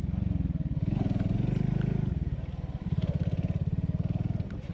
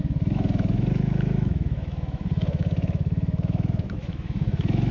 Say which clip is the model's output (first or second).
second